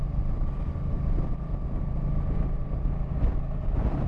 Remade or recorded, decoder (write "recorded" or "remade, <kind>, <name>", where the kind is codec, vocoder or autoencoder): recorded